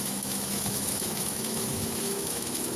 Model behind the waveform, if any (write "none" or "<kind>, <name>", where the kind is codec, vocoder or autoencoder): autoencoder, DAC-VAE